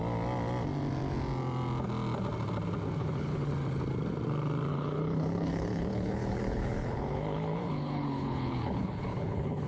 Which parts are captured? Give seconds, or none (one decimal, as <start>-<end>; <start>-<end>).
0.0-3.0; 3.5-4.7